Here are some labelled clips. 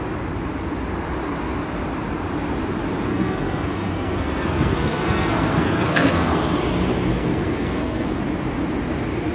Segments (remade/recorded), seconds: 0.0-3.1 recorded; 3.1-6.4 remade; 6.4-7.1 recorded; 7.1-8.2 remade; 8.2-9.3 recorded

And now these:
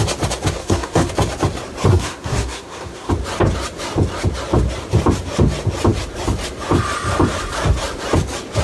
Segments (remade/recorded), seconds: 0.0-0.6 recorded; 0.6-1.1 remade; 1.1-1.9 recorded; 1.9-3.1 remade; 3.1-8.6 recorded

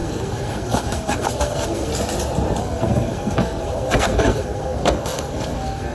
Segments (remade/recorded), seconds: 0.0-1.9 remade; 1.9-2.6 recorded; 2.6-5.9 remade